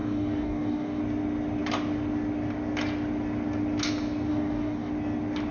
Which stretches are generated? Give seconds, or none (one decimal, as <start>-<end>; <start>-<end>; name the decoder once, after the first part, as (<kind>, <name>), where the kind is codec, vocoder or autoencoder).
0.0-1.0 (codec, DAC); 4.3-4.9